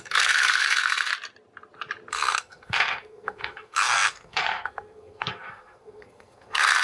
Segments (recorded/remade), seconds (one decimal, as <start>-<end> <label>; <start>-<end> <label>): 0.0-1.1 remade; 1.1-2.1 recorded; 2.1-6.8 remade